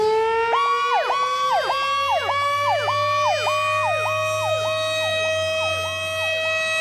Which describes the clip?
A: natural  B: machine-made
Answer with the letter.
A